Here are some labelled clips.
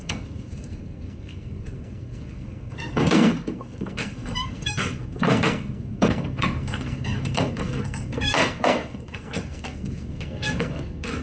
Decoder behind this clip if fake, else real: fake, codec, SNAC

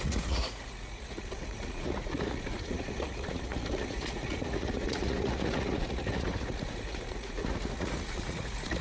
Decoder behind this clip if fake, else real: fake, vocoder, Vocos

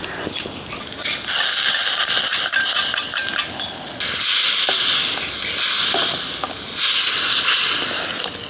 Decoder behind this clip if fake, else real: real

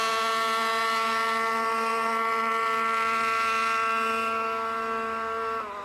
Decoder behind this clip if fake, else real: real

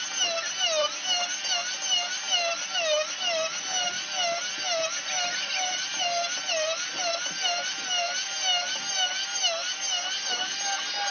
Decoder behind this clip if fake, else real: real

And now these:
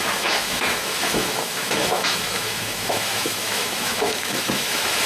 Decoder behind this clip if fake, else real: fake, autoencoder, DAC-VAE